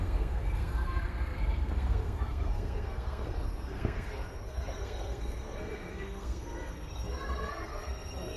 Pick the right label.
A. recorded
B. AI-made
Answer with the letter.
B